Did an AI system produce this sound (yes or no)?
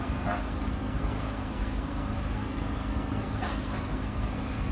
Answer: yes